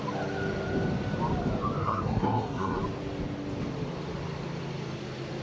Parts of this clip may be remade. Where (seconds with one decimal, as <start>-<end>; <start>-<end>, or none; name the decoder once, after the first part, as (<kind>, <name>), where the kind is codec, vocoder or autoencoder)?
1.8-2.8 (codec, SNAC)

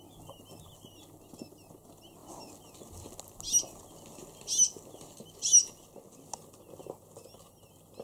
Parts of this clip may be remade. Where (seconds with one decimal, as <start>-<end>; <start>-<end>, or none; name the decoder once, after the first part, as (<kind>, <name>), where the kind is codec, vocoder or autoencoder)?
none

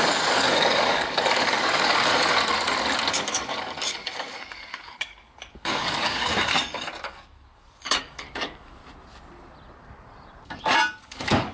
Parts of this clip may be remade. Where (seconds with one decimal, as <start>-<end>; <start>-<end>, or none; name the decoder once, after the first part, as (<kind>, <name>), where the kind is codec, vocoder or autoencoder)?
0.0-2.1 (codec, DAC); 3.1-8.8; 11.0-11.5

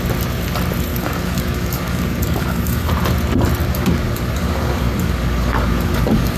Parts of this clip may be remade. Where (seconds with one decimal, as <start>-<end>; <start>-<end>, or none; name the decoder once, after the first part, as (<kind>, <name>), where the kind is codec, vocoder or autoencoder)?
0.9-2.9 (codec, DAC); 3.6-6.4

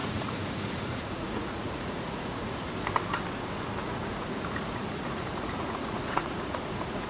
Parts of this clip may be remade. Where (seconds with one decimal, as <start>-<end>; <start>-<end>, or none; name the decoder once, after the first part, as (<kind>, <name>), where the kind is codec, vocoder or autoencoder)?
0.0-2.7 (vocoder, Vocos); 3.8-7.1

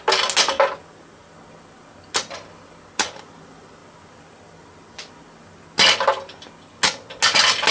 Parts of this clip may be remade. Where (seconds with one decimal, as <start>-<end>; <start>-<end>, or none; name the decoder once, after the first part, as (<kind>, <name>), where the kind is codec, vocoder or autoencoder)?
none